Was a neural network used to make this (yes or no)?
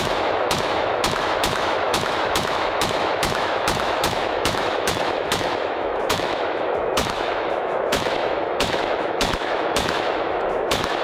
yes